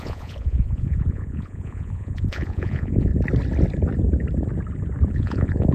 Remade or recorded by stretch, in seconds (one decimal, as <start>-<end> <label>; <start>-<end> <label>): 0.0-3.1 remade; 3.1-5.1 recorded; 5.1-5.7 remade